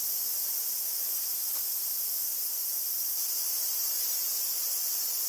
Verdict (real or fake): fake